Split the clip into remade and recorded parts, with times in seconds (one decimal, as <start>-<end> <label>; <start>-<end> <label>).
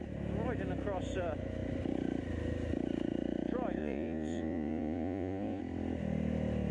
0.0-3.8 recorded; 3.8-5.6 remade; 5.6-6.7 recorded